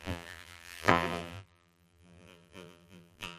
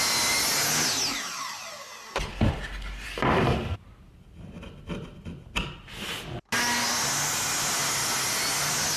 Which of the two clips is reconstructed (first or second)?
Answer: first